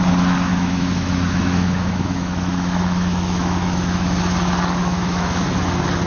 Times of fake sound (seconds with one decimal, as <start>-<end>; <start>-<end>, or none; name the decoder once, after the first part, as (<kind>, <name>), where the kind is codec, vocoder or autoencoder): 0.5-4.2 (autoencoder, DAC-VAE); 4.8-5.4